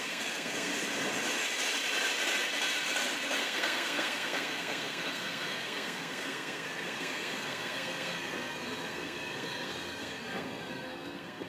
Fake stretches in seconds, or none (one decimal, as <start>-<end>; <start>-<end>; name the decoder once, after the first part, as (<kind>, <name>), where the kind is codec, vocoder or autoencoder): 0.0-0.7 (codec, SNAC); 3.4-11.5